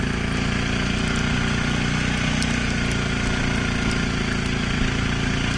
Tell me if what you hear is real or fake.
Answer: real